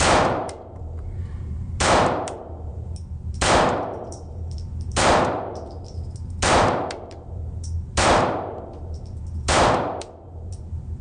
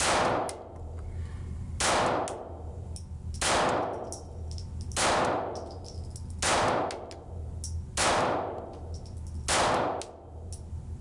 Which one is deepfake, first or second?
first